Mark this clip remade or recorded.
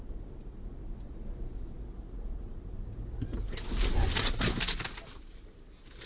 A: recorded